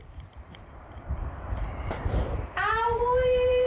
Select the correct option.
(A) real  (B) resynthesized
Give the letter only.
B